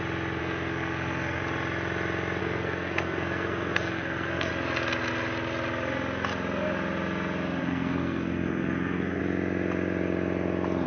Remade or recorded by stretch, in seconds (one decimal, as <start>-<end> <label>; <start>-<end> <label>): 0.0-0.4 recorded; 0.4-1.4 remade; 1.4-2.4 recorded; 2.4-4.5 remade; 4.5-7.6 recorded; 7.6-9.2 remade; 9.2-10.9 recorded